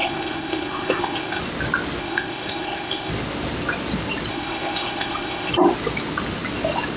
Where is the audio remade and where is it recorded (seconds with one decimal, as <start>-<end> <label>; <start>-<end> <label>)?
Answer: 0.0-1.4 remade; 1.4-2.0 recorded; 2.0-3.1 remade; 3.1-4.3 recorded; 4.3-5.5 remade; 5.5-7.0 recorded